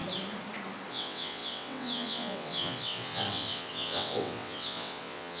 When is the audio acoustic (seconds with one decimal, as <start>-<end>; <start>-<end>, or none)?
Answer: 0.0-0.9